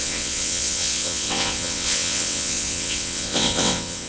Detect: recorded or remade remade